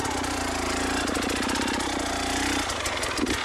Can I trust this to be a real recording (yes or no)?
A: yes